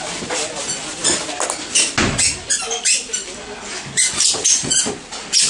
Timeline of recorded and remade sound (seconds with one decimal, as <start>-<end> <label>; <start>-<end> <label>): 0.0-5.5 recorded